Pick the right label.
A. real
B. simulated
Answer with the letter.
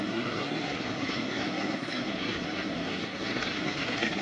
B